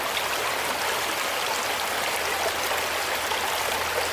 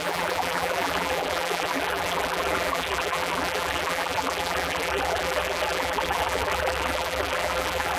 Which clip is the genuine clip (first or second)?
first